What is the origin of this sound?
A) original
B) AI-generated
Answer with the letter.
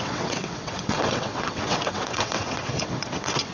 B